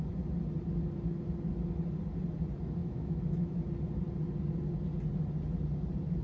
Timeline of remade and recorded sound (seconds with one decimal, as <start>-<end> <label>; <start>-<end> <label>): 0.0-2.8 recorded; 2.8-3.6 remade; 3.6-6.2 recorded